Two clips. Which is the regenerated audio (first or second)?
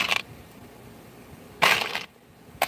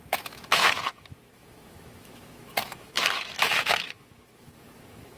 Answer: second